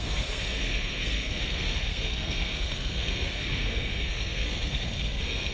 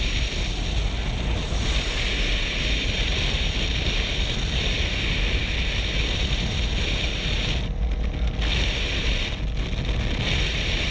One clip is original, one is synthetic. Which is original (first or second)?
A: second